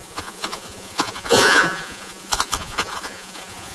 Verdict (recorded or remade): remade